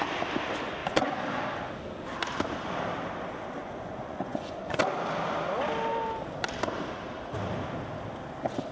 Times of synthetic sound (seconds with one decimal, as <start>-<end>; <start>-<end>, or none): 0.8-1.4; 3.6-4.8